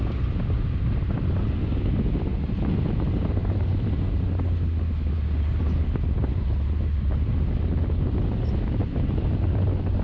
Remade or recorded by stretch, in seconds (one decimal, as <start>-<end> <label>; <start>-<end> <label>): 0.0-10.0 recorded